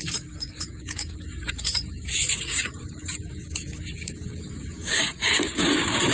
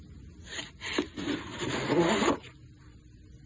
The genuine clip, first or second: second